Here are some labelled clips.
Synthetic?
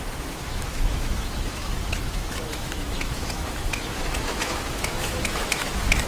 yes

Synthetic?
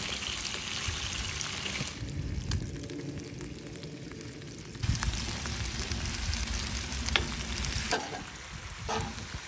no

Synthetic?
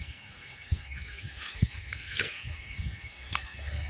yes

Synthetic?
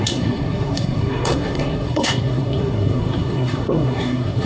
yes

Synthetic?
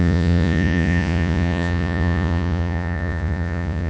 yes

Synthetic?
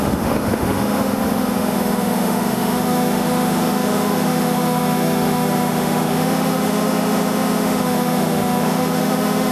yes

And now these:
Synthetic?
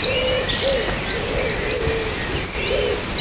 no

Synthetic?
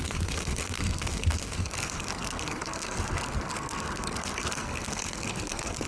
yes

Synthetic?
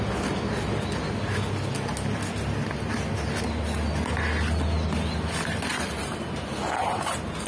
no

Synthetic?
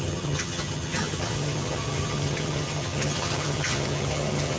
yes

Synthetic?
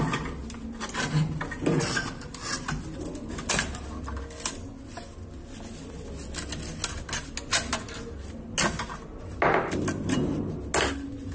no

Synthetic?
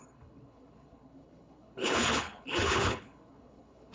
yes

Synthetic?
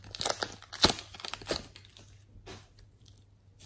no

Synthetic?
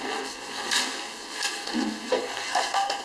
yes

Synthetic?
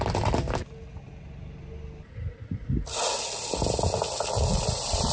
no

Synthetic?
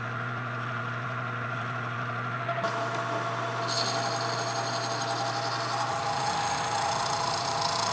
no